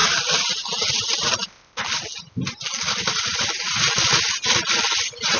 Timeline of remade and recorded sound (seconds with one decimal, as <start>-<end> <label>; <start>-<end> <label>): 0.0-5.4 recorded